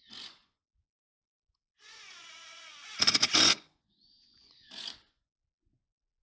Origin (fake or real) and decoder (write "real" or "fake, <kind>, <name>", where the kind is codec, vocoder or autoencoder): fake, vocoder, Vocos